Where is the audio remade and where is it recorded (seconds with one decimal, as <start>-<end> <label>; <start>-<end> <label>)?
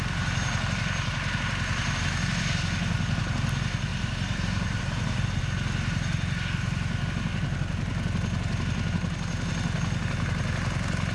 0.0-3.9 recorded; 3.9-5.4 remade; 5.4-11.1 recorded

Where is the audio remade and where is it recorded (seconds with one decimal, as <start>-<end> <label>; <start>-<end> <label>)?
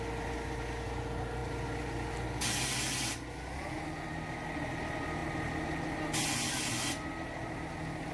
0.0-8.1 recorded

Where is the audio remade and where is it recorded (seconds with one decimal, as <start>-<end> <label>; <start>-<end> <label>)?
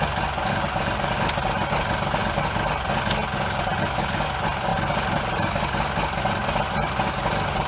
0.0-7.7 recorded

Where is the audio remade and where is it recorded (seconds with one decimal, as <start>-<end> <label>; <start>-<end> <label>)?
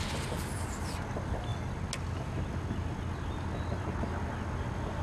0.0-5.0 recorded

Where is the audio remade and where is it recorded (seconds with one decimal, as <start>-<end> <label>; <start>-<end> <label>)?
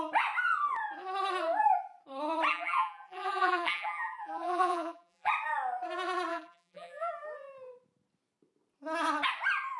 0.0-2.5 recorded; 2.5-5.3 remade; 5.3-6.3 recorded; 6.3-7.1 remade; 7.1-9.8 recorded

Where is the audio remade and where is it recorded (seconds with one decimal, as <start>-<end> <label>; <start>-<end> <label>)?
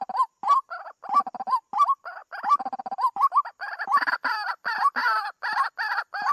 0.0-2.2 recorded; 2.2-2.8 remade; 2.8-5.0 recorded; 5.0-5.7 remade; 5.7-6.3 recorded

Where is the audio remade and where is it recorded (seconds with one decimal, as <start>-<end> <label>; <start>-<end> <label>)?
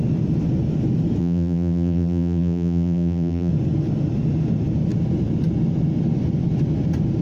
0.0-1.2 recorded; 1.2-3.5 remade; 3.5-7.2 recorded